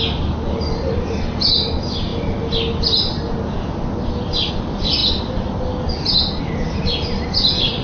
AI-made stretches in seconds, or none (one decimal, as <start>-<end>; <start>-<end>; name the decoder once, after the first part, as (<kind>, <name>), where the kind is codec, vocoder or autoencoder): none